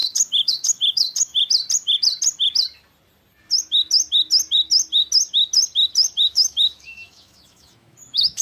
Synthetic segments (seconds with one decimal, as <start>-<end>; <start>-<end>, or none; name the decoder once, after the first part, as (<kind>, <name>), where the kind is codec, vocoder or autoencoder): 0.0-1.3 (autoencoder, DAC-VAE); 6.3-8.4